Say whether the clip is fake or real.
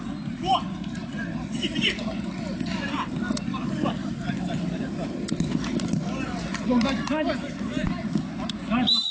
real